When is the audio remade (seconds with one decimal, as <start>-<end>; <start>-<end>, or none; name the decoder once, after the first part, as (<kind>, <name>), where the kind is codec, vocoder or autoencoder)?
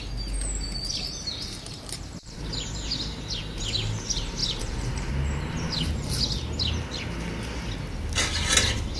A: 4.4-5.1 (vocoder, BigVGAN v2)